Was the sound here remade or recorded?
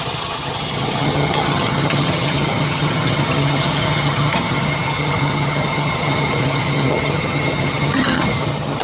remade